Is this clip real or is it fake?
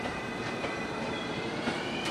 fake